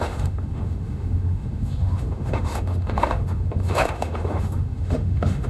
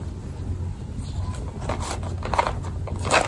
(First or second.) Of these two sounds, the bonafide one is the second